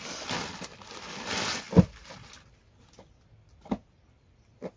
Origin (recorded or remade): recorded